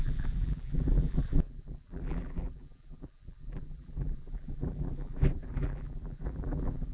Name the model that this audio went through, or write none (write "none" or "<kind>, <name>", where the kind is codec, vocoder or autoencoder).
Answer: vocoder, BigVGAN v2